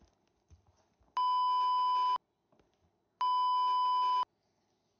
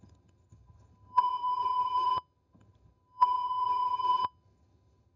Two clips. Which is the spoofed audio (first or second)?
second